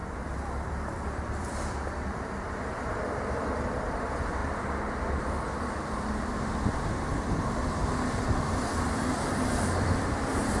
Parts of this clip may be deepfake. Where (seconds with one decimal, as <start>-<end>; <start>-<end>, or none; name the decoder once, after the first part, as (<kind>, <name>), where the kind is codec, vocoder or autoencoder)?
0.0-4.4 (vocoder, BigVGAN v2); 7.0-10.6

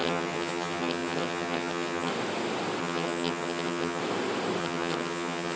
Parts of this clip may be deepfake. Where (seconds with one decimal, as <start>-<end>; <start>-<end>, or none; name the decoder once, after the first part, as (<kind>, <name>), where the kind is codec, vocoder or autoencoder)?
0.0-2.1 (vocoder, HiFi-GAN); 2.8-4.0; 4.6-5.6

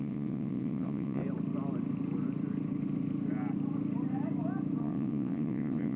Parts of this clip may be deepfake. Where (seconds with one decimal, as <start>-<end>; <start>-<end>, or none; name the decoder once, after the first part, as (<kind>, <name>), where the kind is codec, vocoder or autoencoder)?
0.0-1.2 (vocoder, WaveNeXt); 4.8-6.0

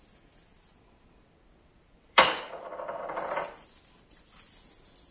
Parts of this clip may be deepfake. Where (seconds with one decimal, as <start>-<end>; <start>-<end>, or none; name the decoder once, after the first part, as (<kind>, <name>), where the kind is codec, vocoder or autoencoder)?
1.8-2.5 (vocoder, BigVGAN v2)

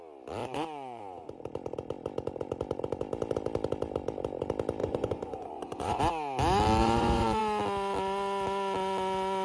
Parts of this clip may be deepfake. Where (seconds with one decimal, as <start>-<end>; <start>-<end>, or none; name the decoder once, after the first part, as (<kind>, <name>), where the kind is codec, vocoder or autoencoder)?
0.4-1.0 (vocoder, Vocos); 4.8-6.0; 6.8-7.4

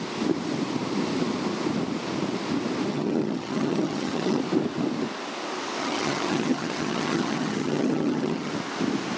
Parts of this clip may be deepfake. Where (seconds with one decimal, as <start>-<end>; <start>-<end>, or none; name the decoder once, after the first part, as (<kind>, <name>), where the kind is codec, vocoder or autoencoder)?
2.9-4.4 (vocoder, HiFi-GAN); 5.8-8.5

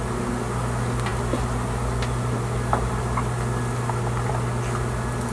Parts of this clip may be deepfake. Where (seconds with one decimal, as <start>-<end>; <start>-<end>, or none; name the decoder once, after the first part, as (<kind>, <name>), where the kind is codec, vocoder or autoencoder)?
none